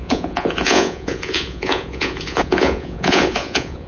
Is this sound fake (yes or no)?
yes